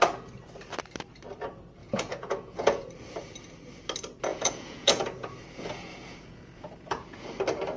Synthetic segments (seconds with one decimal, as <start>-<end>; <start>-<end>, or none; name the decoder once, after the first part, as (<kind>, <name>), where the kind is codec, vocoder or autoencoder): 1.8-2.9 (vocoder, Vocos); 4.3-7.3